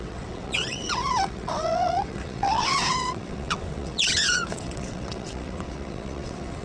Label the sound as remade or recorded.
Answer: remade